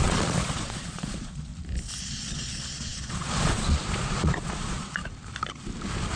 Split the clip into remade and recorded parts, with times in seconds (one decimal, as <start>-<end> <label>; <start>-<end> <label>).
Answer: 0.0-1.5 remade; 1.5-2.0 recorded; 2.0-5.0 remade; 5.0-6.2 recorded